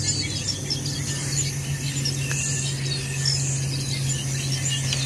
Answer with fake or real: real